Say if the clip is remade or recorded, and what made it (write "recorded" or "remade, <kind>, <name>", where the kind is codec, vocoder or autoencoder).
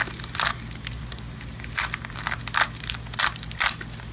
recorded